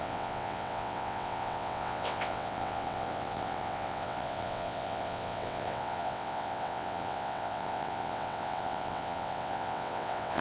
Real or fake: fake